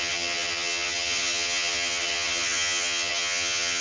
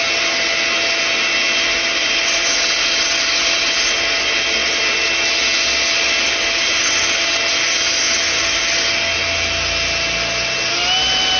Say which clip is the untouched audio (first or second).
second